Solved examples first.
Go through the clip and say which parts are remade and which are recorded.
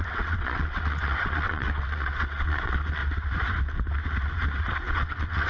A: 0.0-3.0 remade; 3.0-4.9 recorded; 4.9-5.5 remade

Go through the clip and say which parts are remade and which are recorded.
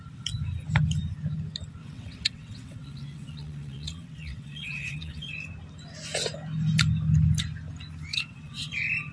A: 0.0-1.8 recorded; 1.8-5.3 remade; 5.3-8.1 recorded; 8.1-8.7 remade; 8.7-9.1 recorded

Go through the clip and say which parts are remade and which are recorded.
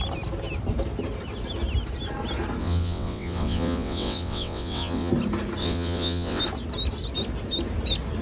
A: 0.0-2.6 recorded; 2.6-5.1 remade; 5.1-5.6 recorded; 5.6-6.4 remade; 6.4-8.2 recorded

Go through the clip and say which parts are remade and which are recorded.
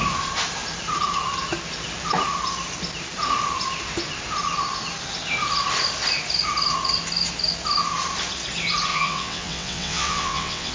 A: 0.0-8.9 recorded; 8.9-10.7 remade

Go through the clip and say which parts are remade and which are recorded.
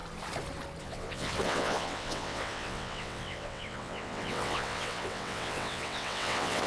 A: 0.0-0.8 recorded; 0.8-6.7 remade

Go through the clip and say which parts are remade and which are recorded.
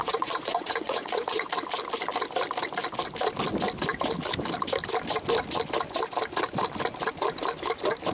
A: 0.0-1.5 remade; 1.5-8.1 recorded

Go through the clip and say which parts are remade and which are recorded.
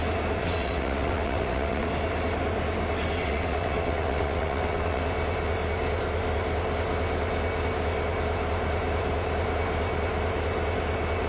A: 0.0-0.4 recorded; 0.4-1.9 remade; 1.9-3.2 recorded; 3.2-5.0 remade; 5.0-11.3 recorded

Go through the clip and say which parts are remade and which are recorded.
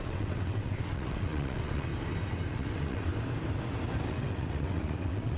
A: 0.0-1.9 remade; 1.9-2.5 recorded; 2.5-3.1 remade; 3.1-4.1 recorded; 4.1-5.4 remade